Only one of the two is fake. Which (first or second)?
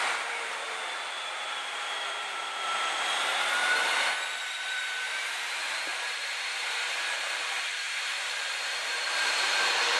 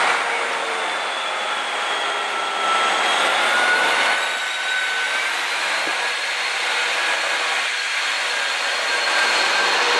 first